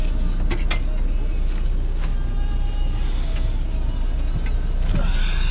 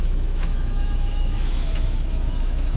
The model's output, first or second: second